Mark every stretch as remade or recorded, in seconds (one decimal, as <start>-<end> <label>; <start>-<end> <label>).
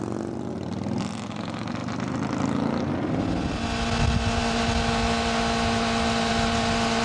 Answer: 0.0-7.0 recorded